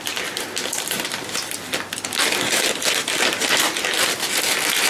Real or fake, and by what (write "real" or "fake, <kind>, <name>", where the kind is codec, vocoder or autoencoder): real